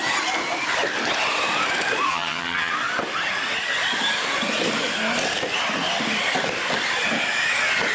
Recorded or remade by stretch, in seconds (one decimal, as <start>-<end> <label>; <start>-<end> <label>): 0.0-2.1 recorded; 2.1-2.7 remade; 2.7-7.9 recorded